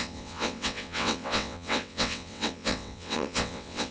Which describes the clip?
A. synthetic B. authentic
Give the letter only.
A